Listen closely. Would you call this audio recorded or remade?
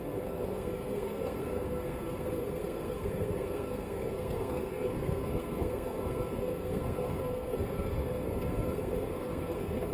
remade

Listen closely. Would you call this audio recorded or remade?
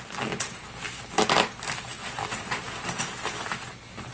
recorded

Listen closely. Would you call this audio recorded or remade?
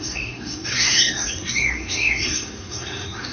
remade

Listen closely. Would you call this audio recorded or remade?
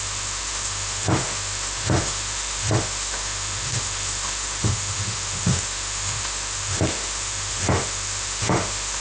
remade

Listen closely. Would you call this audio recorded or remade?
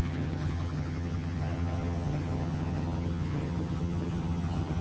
remade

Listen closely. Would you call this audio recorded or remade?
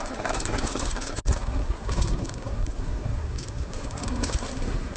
remade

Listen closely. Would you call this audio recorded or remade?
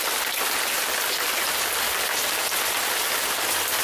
recorded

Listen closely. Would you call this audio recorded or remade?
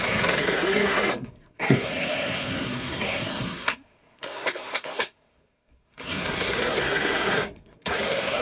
remade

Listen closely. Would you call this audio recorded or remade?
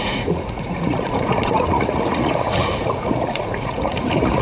remade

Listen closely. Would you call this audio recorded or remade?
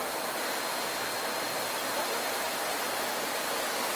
recorded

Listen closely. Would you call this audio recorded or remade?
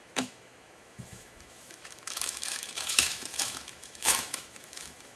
remade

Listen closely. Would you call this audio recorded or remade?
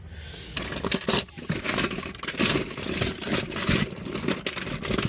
recorded